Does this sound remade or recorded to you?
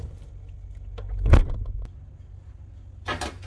recorded